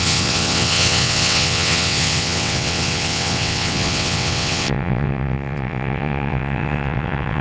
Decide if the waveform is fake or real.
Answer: fake